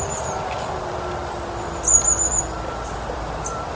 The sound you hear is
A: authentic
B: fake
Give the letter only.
B